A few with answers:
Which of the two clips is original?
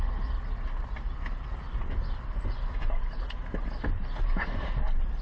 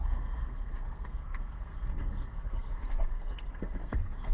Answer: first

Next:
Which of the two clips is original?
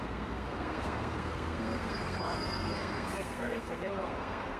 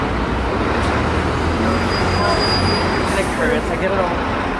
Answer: second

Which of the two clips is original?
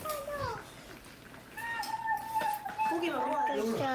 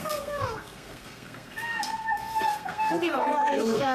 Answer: first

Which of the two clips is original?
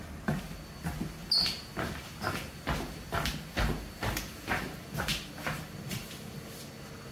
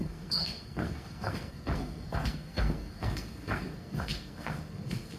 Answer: first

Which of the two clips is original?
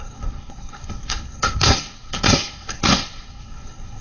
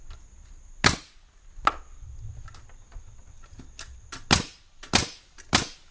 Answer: second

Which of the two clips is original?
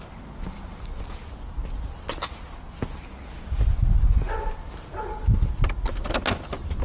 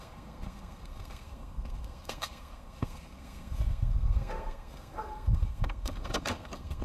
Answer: first